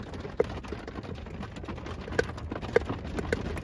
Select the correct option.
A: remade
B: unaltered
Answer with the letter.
B